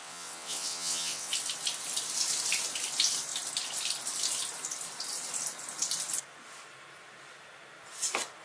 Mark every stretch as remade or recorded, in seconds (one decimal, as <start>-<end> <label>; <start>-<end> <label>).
0.0-1.3 remade; 1.3-8.4 recorded